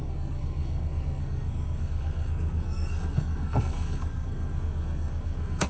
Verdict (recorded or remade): remade